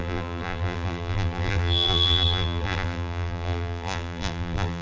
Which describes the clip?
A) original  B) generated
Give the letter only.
B